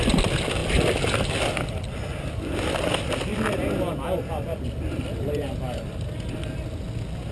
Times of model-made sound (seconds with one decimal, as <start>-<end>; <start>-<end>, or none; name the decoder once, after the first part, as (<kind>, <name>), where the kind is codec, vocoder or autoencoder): none